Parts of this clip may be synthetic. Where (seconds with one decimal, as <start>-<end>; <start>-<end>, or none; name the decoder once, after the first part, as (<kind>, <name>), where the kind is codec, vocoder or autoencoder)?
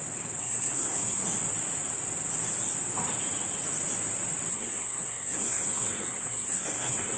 0.4-1.2 (codec, SNAC); 4.5-7.2